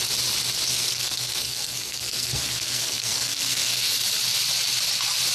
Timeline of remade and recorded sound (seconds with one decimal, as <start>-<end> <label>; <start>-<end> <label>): 0.0-0.7 recorded; 0.7-3.9 remade; 3.9-5.3 recorded